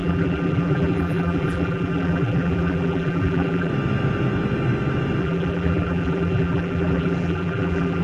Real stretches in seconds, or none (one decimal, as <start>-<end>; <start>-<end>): 3.7-5.2